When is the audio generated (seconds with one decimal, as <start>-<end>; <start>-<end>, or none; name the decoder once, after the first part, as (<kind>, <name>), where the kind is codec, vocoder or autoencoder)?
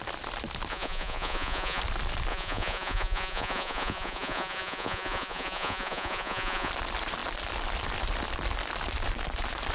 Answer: 0.7-1.8 (vocoder, Vocos); 2.3-6.7